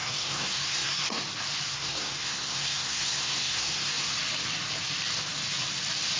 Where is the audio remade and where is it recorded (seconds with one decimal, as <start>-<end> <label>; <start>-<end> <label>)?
0.0-1.2 remade; 1.2-1.7 recorded; 1.7-4.1 remade; 4.1-6.2 recorded